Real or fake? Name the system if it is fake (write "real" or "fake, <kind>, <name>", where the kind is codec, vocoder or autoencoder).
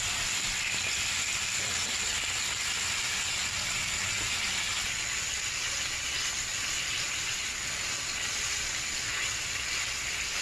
real